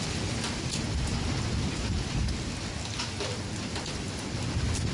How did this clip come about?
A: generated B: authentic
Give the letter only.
B